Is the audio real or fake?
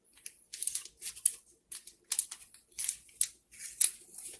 real